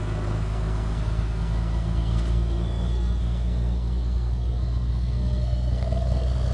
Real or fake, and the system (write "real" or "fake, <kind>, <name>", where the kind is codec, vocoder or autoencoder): fake, codec, SNAC